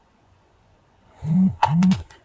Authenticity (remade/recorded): remade